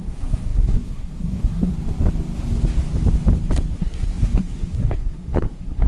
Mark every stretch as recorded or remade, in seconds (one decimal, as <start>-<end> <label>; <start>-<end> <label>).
0.0-1.7 remade; 1.7-3.7 recorded; 3.7-5.9 remade